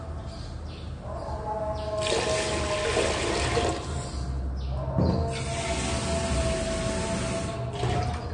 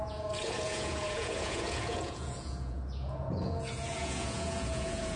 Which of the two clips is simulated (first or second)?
second